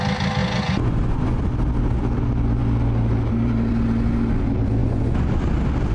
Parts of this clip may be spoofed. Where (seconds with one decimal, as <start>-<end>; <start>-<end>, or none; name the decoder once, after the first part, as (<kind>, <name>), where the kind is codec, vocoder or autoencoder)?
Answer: 0.4-1.4 (vocoder, Vocos); 4.8-5.5